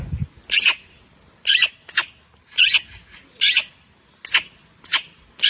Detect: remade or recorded recorded